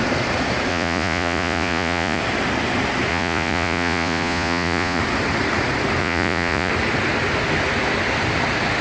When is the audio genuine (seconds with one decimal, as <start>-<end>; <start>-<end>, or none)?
0.0-0.7; 2.2-3.1; 5.0-6.0; 6.7-8.8